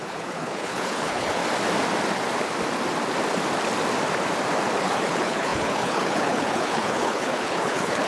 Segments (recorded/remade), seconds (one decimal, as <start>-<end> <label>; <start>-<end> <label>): 0.0-1.4 remade; 1.4-4.8 recorded; 4.8-8.1 remade